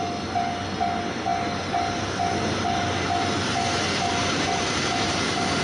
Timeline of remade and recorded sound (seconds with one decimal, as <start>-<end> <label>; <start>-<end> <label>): 0.0-5.6 recorded